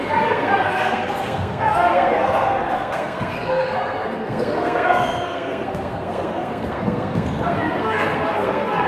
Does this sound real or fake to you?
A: fake